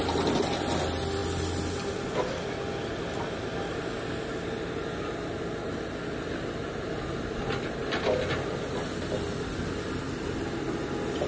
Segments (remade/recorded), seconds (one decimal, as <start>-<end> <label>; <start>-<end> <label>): 0.0-11.3 recorded

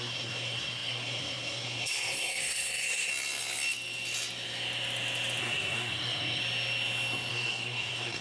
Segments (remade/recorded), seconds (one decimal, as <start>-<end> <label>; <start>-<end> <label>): 0.0-3.1 remade; 3.1-5.4 recorded; 5.4-6.4 remade; 6.4-7.3 recorded; 7.3-8.2 remade

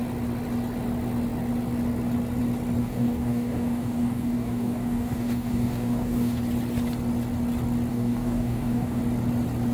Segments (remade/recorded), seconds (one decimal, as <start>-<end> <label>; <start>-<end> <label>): 0.0-2.8 recorded; 2.8-6.4 remade; 6.4-7.9 recorded; 7.9-9.0 remade; 9.0-9.7 recorded

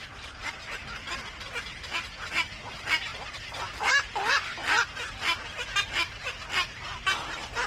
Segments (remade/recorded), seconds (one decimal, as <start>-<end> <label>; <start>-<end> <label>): 0.0-3.1 recorded; 3.1-4.3 remade; 4.3-7.7 recorded

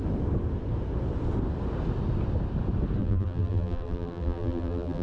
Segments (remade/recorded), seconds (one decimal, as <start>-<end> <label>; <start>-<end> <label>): 0.0-3.0 recorded; 3.0-5.0 remade

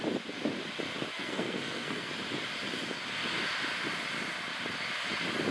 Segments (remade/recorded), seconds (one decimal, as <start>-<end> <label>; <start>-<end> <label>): 0.0-1.1 recorded; 1.1-2.1 remade; 2.1-5.5 recorded

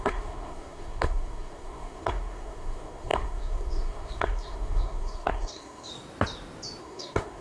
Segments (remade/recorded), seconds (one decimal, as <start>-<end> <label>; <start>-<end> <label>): 0.0-5.9 remade; 5.9-6.8 recorded; 6.8-7.4 remade